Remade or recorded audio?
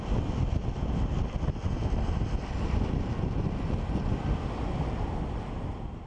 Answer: recorded